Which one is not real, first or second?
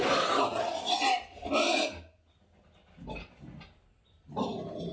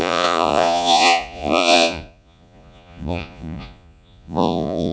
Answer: second